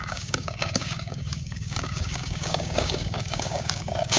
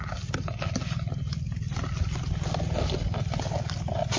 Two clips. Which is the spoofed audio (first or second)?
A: first